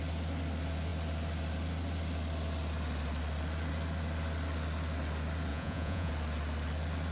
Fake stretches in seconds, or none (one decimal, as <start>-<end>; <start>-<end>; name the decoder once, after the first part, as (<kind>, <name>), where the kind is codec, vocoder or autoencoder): 5.5-6.1 (vocoder, Vocos)